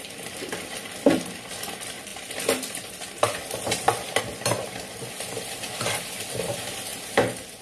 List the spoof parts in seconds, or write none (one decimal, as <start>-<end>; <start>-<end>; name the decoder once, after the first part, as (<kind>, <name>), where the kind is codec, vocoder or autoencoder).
0.0-2.1 (vocoder, BigVGAN v2); 4.2-6.9